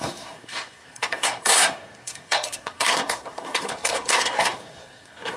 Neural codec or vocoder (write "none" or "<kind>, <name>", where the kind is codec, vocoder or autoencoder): codec, SNAC